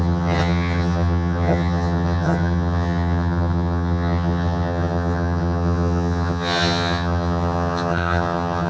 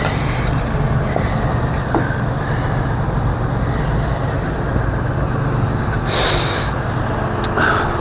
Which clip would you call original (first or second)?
second